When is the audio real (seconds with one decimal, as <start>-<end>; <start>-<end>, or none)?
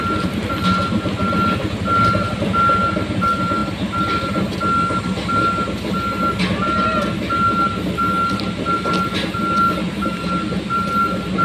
0.0-11.4